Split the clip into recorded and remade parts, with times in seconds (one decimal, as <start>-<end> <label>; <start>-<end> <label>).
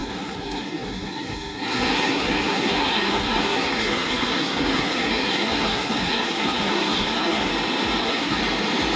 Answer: 0.0-7.5 remade; 7.5-8.0 recorded; 8.0-8.4 remade; 8.4-9.0 recorded